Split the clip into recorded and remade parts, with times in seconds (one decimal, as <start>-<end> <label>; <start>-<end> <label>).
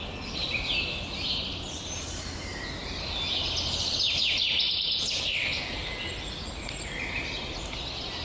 0.0-8.2 recorded